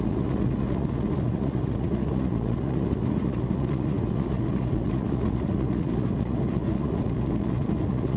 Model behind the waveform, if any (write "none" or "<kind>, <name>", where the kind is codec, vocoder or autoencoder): vocoder, Vocos